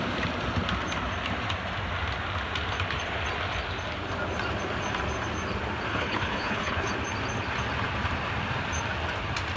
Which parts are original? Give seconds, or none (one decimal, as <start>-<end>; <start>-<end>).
0.0-5.9; 6.9-9.6